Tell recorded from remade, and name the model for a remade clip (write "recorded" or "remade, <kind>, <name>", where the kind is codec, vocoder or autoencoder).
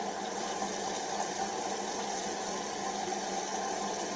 recorded